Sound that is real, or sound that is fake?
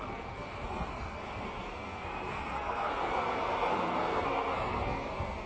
fake